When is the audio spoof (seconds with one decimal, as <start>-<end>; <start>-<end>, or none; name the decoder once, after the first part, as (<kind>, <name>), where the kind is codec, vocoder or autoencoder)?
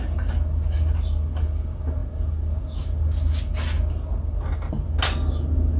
none